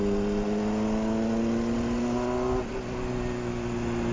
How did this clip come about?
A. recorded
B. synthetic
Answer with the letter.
A